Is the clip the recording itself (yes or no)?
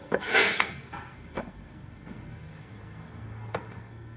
no